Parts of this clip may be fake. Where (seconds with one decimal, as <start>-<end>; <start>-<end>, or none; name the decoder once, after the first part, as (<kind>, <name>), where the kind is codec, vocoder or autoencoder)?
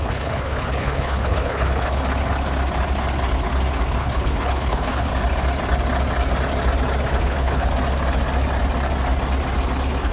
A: 0.0-2.0 (codec, HILCodec); 4.0-5.1; 7.2-7.7